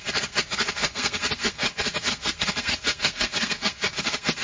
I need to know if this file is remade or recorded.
remade